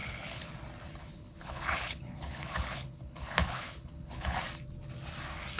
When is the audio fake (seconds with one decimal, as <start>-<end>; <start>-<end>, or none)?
0.0-0.5; 1.0-4.4